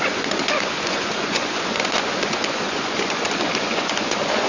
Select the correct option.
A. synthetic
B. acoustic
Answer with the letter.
A